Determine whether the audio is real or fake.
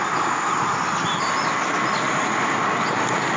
real